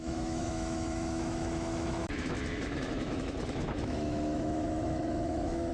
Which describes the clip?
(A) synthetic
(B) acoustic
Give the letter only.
A